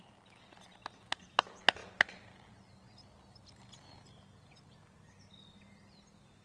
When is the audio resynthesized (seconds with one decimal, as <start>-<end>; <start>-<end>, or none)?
0.7-1.2